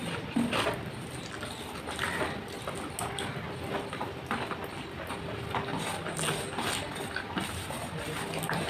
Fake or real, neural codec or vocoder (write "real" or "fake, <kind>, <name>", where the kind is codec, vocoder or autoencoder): real